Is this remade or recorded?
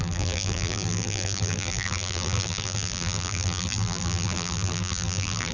remade